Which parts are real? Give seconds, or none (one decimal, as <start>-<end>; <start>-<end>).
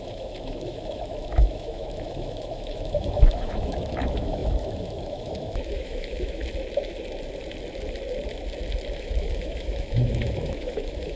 6.4-8.9